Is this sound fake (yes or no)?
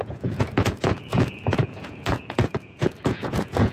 yes